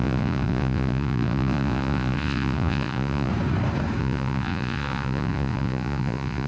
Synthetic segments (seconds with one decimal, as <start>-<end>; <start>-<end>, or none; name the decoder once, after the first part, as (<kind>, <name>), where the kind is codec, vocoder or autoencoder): 0.0-3.3 (vocoder, Vocos); 4.0-6.5